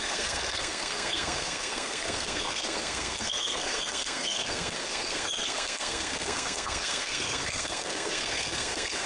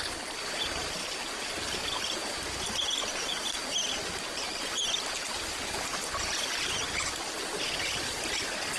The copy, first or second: first